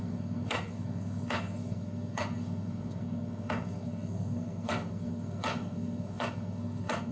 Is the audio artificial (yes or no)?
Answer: yes